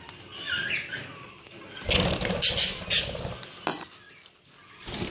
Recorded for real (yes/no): yes